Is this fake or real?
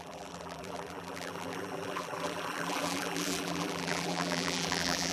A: fake